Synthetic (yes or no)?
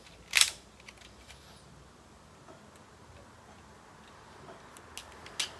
no